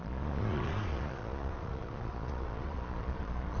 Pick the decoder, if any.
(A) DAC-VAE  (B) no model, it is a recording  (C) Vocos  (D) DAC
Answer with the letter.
C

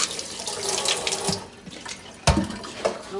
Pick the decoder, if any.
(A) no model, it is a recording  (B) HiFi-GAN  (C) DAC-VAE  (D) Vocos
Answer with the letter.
A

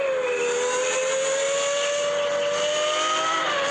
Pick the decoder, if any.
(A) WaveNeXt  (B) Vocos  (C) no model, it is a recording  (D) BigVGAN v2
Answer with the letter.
C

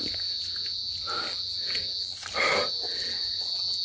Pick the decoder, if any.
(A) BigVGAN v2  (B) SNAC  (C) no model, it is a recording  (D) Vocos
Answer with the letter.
C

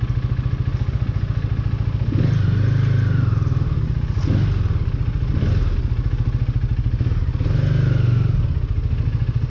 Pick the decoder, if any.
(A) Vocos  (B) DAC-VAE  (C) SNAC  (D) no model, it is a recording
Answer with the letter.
D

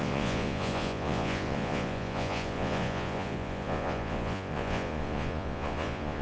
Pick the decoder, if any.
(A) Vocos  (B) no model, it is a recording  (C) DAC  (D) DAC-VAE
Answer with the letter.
A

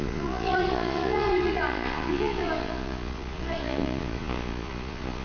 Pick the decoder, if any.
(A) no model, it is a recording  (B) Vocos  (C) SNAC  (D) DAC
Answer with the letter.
B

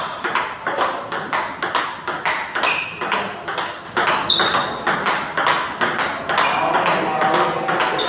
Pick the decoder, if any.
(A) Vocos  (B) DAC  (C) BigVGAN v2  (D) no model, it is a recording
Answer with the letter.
D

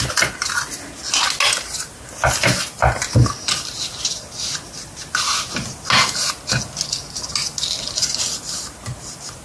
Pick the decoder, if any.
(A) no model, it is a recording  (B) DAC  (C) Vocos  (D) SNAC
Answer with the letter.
A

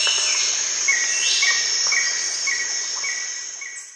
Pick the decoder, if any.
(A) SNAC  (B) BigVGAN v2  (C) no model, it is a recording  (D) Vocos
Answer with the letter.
C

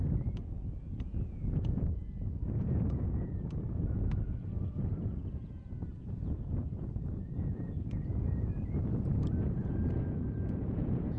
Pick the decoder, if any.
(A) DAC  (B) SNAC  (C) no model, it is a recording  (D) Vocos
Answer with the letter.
D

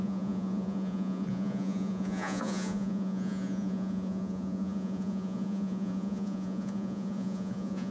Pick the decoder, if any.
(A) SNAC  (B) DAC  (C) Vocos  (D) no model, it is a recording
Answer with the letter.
C